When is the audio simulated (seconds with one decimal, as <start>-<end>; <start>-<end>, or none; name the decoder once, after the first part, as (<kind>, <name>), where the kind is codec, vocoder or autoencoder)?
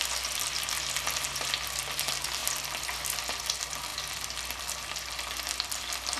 none